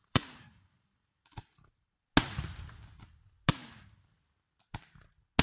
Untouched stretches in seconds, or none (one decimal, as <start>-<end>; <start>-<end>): 2.0-5.4